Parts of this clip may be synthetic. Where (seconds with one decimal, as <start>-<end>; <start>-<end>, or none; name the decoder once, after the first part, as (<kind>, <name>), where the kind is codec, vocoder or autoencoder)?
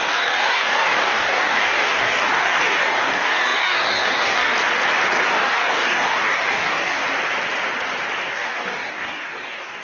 0.0-4.5 (codec, DAC); 5.3-7.0; 8.3-9.8